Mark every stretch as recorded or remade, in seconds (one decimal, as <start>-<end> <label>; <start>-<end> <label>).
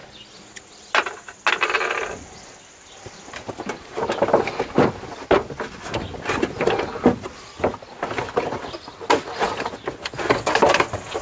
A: 0.0-11.2 recorded